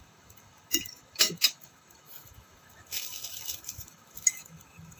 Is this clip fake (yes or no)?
yes